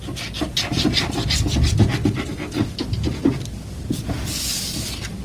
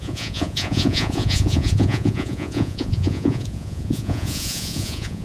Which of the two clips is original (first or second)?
first